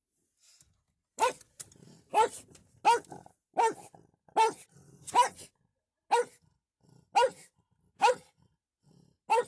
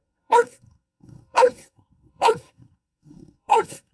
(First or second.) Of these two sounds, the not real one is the second